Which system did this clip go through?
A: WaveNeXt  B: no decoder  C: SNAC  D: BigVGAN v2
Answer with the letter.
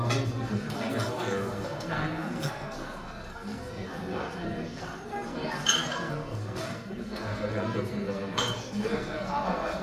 C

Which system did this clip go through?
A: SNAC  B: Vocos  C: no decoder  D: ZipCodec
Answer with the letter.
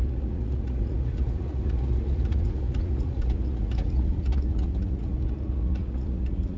B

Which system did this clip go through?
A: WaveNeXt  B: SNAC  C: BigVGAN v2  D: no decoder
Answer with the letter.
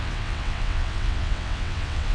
A